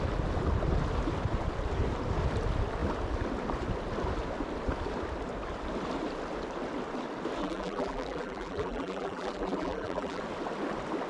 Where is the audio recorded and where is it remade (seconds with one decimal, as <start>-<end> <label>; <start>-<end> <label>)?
0.0-7.4 recorded; 7.4-10.2 remade; 10.2-11.1 recorded